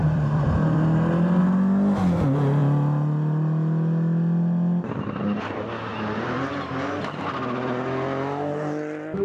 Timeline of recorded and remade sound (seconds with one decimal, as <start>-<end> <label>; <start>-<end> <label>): 0.0-1.4 remade; 1.4-5.9 recorded; 5.9-6.7 remade; 6.7-9.2 recorded